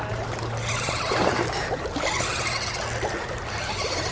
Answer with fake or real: real